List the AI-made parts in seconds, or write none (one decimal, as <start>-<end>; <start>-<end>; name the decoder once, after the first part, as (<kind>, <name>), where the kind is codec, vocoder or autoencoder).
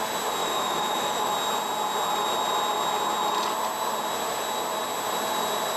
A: 0.4-1.3 (autoencoder, DAC-VAE)